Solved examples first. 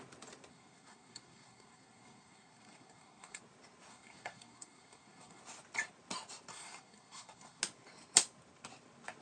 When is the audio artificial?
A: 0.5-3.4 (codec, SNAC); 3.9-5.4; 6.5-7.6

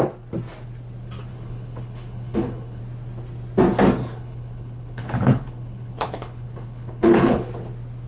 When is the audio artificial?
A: 1.3-2.8 (codec, HILCodec); 4.0-7.5

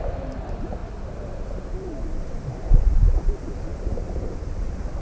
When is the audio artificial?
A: 0.8-2.2 (vocoder, BigVGAN v2); 3.7-4.6

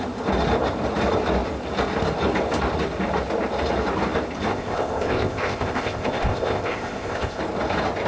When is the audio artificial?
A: 4.5-7.4 (codec, ZipCodec)

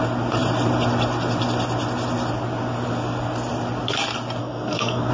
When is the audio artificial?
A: 4.4-5.1 (codec, SNAC)

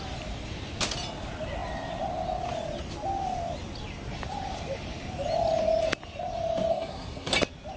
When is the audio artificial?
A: 6.7-7.3 (codec, SNAC)